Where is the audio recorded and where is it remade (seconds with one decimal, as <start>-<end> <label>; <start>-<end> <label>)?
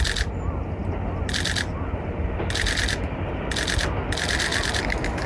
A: 0.0-5.3 recorded